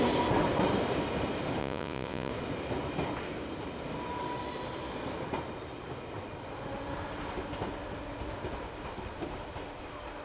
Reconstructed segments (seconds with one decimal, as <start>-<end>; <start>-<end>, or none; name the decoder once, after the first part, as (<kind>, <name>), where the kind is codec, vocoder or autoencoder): 1.6-2.3 (vocoder, Vocos)

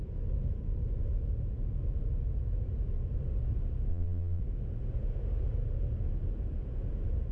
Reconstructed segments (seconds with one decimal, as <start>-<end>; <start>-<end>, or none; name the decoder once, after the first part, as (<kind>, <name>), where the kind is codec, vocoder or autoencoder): 3.9-4.4 (vocoder, BigVGAN v2)

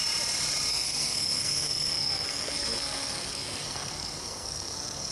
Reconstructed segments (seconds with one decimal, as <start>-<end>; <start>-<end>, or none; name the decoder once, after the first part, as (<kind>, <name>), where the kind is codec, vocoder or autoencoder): 0.7-5.1 (codec, SNAC)

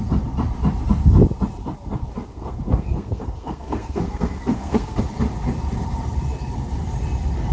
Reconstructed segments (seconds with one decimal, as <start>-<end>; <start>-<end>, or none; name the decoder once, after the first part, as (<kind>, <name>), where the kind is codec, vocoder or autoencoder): 2.3-5.0 (codec, SNAC)

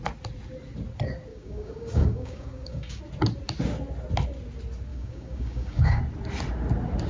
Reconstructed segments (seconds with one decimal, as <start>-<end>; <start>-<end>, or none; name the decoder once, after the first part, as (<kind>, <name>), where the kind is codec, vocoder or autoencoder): 1.3-3.0 (codec, DAC); 4.9-6.0